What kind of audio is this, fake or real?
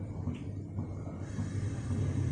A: real